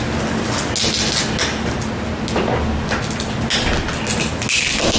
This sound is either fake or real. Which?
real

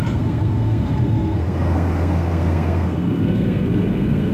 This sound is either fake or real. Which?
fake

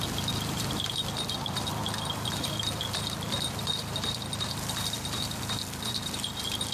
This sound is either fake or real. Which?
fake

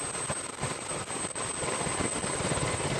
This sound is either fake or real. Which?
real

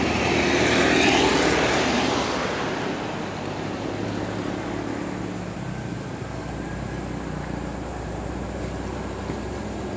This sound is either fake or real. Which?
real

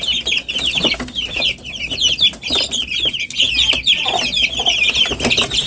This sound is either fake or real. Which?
real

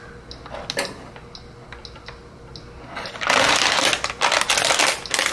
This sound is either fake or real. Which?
real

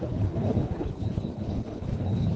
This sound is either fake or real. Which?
fake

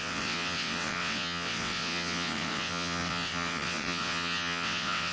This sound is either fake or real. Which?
fake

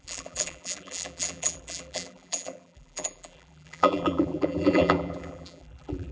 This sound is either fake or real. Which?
fake